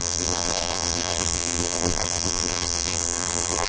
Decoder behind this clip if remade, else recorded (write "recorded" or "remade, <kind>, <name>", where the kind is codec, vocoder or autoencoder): remade, vocoder, BigVGAN v2